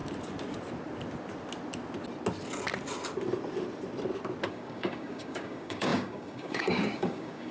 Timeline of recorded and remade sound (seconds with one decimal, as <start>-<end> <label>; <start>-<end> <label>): 0.0-4.5 recorded; 4.5-7.5 remade